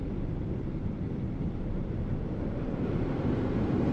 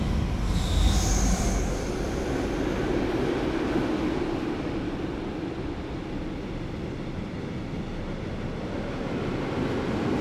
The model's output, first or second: first